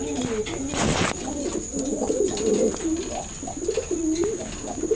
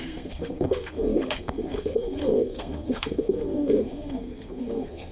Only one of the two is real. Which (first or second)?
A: first